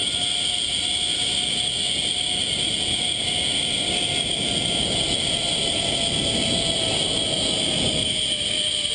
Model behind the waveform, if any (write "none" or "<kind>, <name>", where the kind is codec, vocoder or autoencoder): none